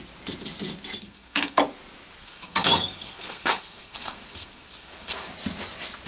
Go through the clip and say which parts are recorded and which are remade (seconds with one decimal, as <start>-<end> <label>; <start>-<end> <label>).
0.0-1.0 recorded; 1.0-1.6 remade; 1.6-2.2 recorded; 2.2-5.3 remade; 5.3-6.1 recorded